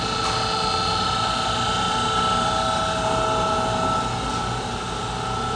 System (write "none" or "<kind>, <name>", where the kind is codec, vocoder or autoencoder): none